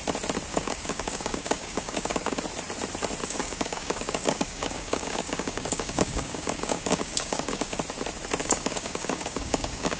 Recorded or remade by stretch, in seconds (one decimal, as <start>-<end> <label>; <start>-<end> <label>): 0.0-0.5 recorded; 0.5-2.4 remade; 2.4-3.2 recorded; 3.2-7.8 remade; 7.8-8.4 recorded; 8.4-10.0 remade